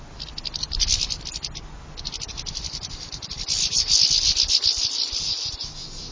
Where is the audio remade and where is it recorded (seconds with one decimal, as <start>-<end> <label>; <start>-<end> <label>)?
0.0-6.1 recorded